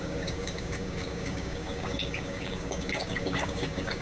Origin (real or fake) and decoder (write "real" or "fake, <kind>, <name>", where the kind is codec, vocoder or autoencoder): fake, codec, DAC